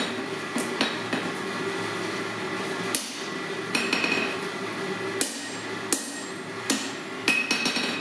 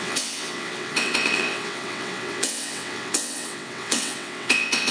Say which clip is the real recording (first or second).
first